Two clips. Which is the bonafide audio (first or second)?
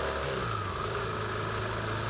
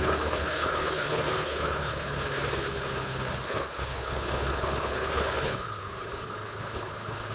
first